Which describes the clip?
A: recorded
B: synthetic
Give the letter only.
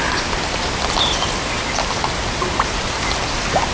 A